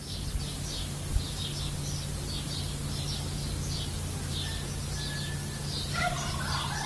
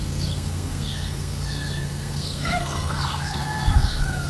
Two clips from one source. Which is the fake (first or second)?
second